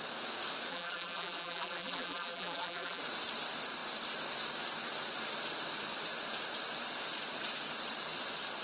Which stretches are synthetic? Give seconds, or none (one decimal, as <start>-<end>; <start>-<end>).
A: 0.7-3.0